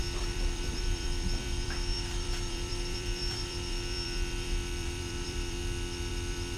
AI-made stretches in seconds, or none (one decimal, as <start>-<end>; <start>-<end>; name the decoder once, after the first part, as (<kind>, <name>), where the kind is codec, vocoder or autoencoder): 0.0-5.6 (vocoder, BigVGAN v2); 6.1-6.6